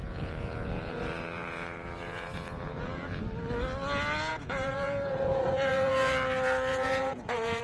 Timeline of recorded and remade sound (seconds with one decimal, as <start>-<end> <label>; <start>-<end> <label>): 0.0-3.2 remade; 3.2-4.3 recorded; 4.3-6.1 remade; 6.1-6.7 recorded; 6.7-7.6 remade